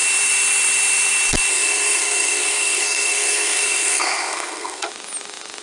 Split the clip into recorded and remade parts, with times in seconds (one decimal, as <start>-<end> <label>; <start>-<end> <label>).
0.0-1.5 recorded; 1.5-4.9 remade; 4.9-5.6 recorded